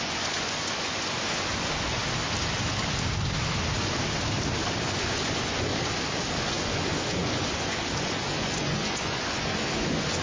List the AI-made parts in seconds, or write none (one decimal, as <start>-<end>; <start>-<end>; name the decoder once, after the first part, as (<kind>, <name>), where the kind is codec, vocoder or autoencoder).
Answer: 0.0-2.0 (vocoder, Vocos); 4.8-5.7; 6.4-10.2